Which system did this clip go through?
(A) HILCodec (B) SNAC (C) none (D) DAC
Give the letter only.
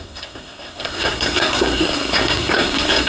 B